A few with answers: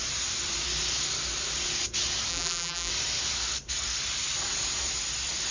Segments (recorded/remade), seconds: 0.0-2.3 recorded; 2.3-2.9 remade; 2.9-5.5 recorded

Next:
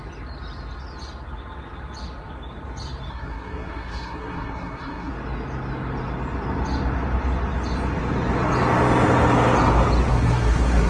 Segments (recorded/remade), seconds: 0.0-3.1 recorded; 3.1-5.1 remade; 5.1-10.1 recorded; 10.1-10.9 remade

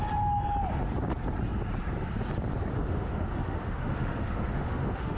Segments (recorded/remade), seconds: 0.0-2.7 recorded; 2.7-5.2 remade

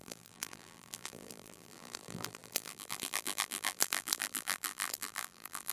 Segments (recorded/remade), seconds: 0.0-5.7 remade

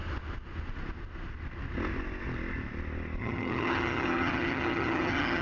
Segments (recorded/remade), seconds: 0.0-3.2 recorded; 3.2-5.4 remade

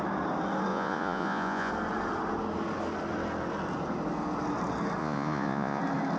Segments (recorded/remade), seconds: 0.0-0.7 recorded; 0.7-1.7 remade; 1.7-5.0 recorded; 5.0-5.8 remade; 5.8-6.2 recorded

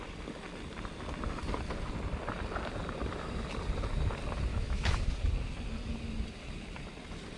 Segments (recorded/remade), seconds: 0.0-4.5 recorded; 4.5-5.1 remade; 5.1-7.4 recorded

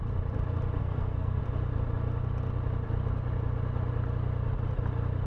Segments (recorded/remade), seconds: 0.0-0.8 recorded; 0.8-1.4 remade; 1.4-5.3 recorded